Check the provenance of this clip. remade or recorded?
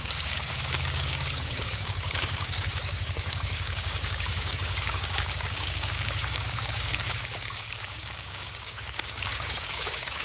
remade